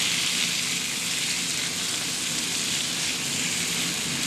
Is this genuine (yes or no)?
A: yes